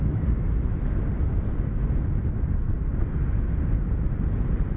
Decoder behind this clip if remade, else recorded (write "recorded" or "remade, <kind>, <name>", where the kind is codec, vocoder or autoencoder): recorded